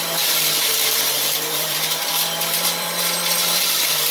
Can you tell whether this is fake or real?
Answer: fake